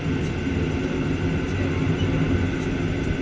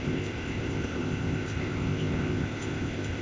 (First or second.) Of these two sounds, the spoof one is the second